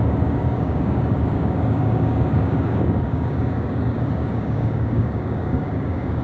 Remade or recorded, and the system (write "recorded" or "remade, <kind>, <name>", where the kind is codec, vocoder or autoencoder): remade, codec, DAC